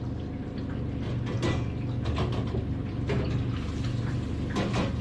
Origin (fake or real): real